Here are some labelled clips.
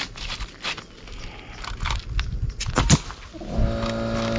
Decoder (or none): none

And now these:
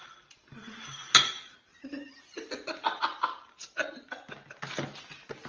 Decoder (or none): none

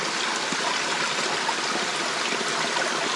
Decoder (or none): none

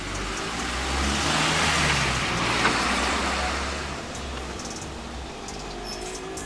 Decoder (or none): none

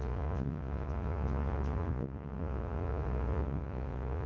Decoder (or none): vocoder, Vocos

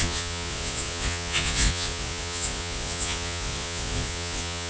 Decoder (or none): vocoder, Vocos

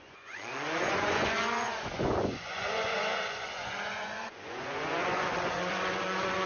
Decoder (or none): vocoder, Vocos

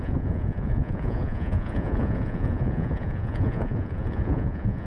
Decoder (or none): vocoder, Vocos